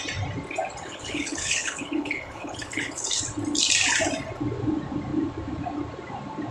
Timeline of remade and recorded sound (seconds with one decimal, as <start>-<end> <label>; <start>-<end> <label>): 0.0-0.8 recorded; 0.8-3.2 remade; 3.2-6.5 recorded